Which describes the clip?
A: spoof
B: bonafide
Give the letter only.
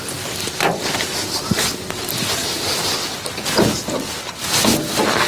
B